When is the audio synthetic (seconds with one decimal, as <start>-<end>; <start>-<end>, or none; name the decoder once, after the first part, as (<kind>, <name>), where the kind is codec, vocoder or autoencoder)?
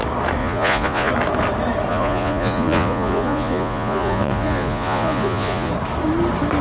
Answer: 0.4-1.1 (vocoder, Vocos); 1.9-5.7